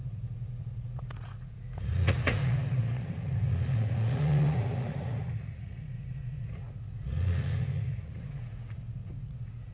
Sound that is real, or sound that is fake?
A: fake